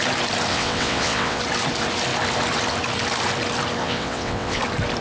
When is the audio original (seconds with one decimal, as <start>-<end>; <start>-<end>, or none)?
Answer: 0.0-0.5; 1.4-3.8; 4.6-5.0